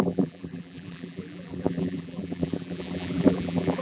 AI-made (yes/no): yes